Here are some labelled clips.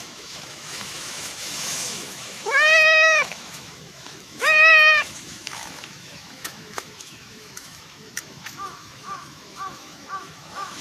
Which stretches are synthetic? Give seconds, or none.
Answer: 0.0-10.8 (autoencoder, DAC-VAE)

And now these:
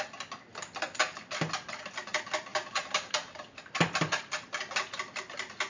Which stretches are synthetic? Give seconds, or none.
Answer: 2.5-4.2 (vocoder, BigVGAN v2)